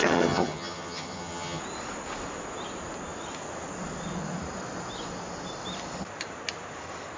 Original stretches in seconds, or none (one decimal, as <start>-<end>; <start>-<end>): 1.6-7.2